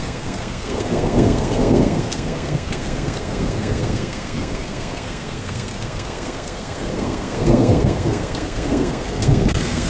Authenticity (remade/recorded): remade